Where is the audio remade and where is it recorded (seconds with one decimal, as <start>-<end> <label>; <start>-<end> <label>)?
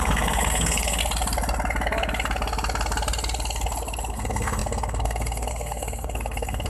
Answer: 0.0-1.0 remade; 1.0-4.1 recorded; 4.1-6.7 remade